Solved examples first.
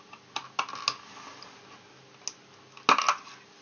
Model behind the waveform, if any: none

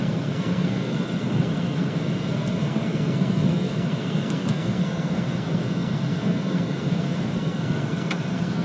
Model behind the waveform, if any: codec, SNAC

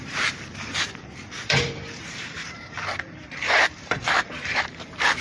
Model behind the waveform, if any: vocoder, BigVGAN v2